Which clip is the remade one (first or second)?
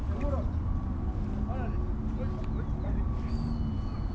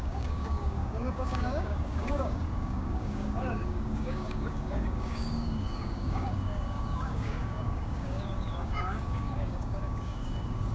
second